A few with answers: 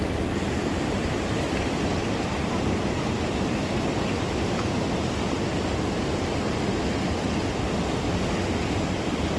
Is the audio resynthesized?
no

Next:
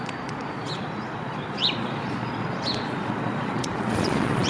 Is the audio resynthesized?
yes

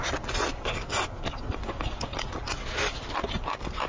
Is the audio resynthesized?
no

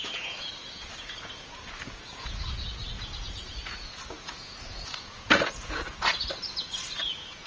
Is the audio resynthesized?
yes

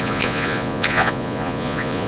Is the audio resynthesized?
yes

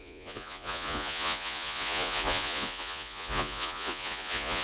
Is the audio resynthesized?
yes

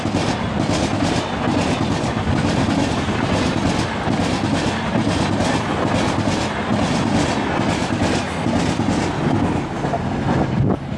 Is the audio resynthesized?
no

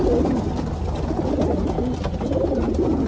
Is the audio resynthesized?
no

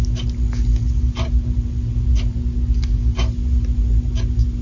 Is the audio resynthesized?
no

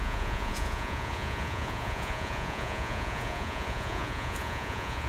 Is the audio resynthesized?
yes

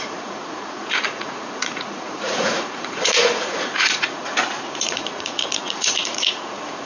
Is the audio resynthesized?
yes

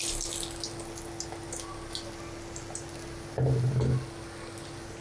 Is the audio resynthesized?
no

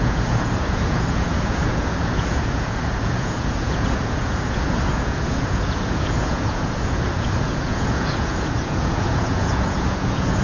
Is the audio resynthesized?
yes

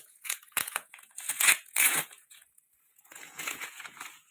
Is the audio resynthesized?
yes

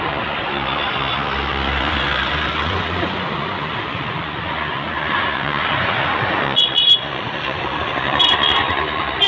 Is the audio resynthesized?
yes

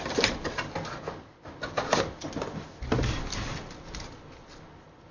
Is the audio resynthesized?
no